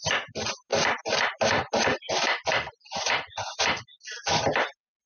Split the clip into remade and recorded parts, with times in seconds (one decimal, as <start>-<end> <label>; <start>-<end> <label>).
0.0-5.1 recorded